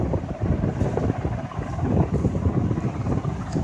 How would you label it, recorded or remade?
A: remade